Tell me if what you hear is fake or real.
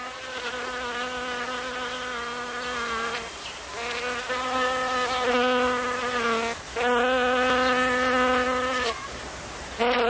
real